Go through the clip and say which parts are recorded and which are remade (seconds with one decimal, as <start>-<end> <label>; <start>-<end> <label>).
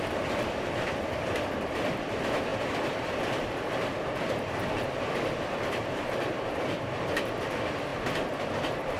0.0-9.0 remade